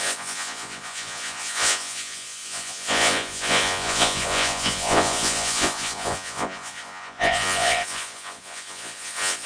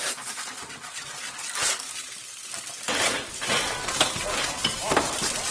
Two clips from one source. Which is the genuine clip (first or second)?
second